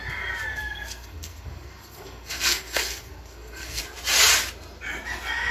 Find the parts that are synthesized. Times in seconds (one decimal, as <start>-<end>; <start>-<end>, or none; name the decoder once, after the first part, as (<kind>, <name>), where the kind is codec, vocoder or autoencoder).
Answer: 0.5-3.8 (codec, SNAC)